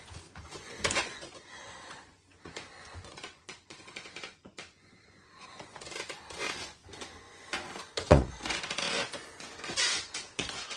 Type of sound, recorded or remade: remade